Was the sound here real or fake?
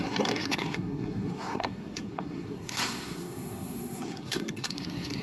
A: fake